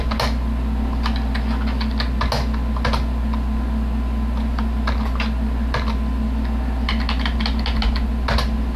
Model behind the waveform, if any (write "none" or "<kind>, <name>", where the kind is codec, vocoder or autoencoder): none